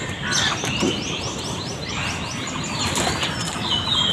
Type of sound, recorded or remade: recorded